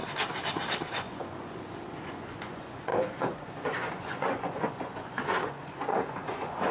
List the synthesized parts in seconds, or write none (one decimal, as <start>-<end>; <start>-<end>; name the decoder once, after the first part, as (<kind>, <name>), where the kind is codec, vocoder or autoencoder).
0.9-6.7 (vocoder, Vocos)